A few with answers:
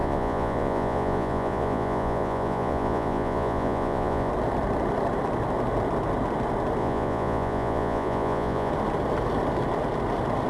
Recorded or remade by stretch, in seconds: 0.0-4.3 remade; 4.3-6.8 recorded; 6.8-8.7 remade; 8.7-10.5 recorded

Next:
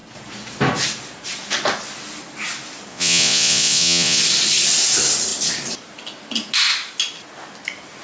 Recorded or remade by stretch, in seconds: 0.0-2.9 recorded; 2.9-4.2 remade; 4.2-8.0 recorded

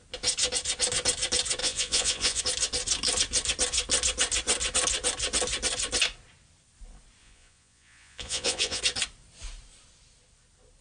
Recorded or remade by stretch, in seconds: 0.0-1.6 recorded; 1.6-2.4 remade; 2.4-7.2 recorded; 7.2-8.8 remade; 8.8-10.8 recorded